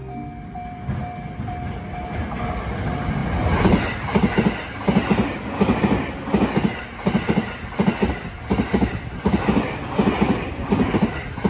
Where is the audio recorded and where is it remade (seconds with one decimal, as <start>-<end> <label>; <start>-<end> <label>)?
0.0-11.5 recorded